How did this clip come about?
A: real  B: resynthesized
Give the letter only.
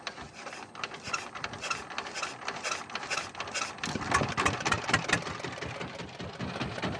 B